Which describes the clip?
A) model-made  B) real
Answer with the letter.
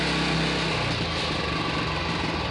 B